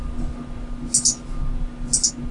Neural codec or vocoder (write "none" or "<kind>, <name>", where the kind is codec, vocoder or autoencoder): none